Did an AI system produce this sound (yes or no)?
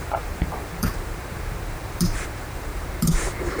yes